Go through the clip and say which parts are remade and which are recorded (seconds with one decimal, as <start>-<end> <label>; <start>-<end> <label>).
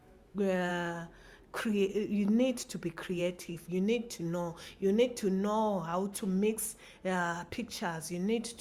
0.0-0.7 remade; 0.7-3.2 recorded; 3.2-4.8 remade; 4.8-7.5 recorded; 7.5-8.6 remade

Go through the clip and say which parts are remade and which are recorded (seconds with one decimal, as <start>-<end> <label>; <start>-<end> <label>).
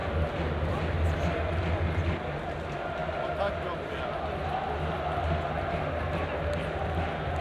0.0-7.4 recorded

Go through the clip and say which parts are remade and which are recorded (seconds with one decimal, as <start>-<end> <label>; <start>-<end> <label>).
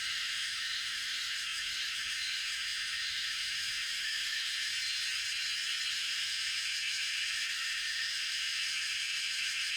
0.0-4.7 remade; 4.7-5.9 recorded; 5.9-9.8 remade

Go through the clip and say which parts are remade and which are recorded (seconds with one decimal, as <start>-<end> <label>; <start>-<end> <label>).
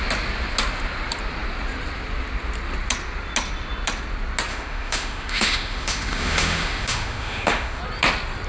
0.0-4.5 recorded; 4.5-7.8 remade; 7.8-8.5 recorded